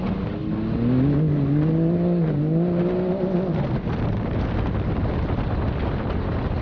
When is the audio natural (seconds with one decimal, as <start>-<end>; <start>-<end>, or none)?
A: 0.0-6.6

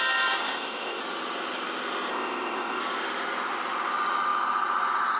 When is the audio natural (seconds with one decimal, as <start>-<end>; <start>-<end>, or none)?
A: 0.0-0.4; 1.0-2.1; 2.8-5.2

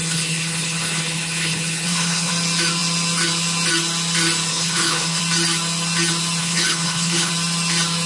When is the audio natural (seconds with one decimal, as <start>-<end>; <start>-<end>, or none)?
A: 2.3-4.5; 5.2-6.4; 7.3-8.1

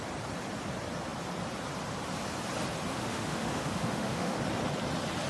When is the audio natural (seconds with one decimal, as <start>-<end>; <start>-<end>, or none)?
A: 0.0-2.9; 4.4-5.3

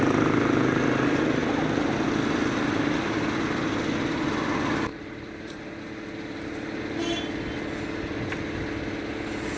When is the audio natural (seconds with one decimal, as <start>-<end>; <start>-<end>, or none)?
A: 0.0-4.9; 5.8-9.6

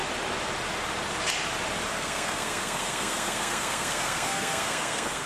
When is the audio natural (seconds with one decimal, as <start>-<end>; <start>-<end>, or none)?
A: 0.0-1.9

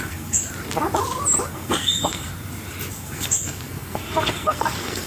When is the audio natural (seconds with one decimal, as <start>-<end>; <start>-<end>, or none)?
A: 0.4-1.5; 2.3-2.9